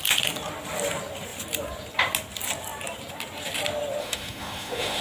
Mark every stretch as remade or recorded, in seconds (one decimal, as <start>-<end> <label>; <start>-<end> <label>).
0.0-4.0 recorded; 4.0-5.0 remade